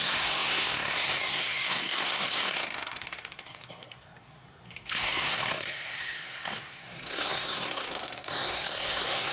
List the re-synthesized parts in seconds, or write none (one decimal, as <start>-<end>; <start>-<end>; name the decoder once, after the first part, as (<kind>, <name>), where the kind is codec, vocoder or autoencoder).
0.0-9.3 (codec, SNAC)